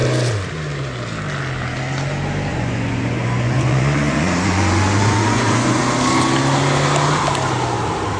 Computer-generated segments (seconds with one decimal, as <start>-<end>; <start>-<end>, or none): 2.5-5.8